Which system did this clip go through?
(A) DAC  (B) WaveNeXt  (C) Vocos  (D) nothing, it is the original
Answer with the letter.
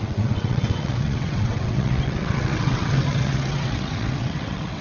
B